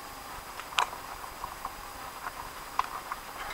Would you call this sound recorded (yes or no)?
yes